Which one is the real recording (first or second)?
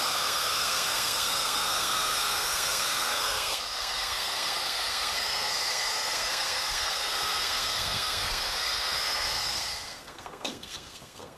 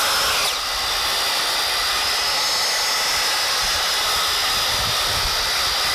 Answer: second